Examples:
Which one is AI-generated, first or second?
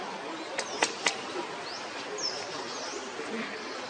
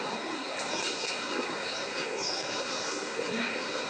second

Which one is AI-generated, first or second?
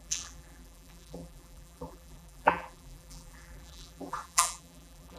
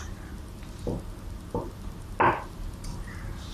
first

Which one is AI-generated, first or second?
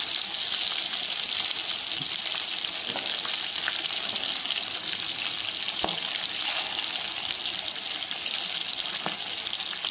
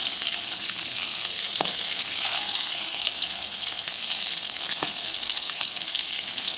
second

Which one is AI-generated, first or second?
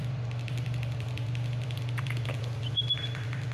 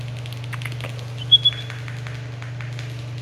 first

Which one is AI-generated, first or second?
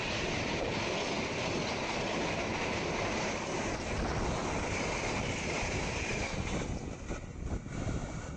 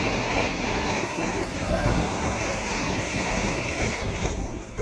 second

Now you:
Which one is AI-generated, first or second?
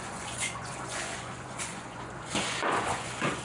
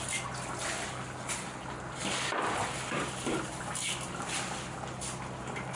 first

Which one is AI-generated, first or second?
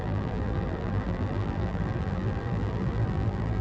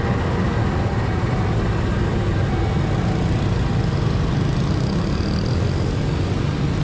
first